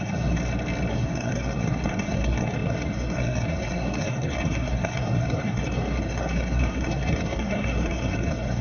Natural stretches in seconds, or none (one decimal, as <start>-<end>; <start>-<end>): 0.4-0.9